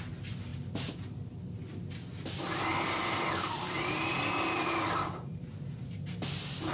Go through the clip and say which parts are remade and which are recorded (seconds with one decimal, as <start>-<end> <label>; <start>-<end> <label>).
0.0-6.7 recorded